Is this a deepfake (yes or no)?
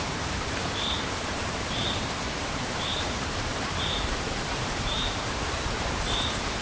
yes